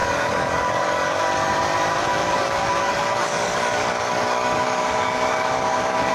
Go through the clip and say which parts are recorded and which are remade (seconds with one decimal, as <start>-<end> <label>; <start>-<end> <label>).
0.0-1.2 remade; 1.2-2.2 recorded; 2.2-6.1 remade